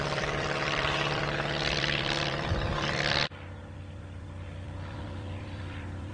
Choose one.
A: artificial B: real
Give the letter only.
A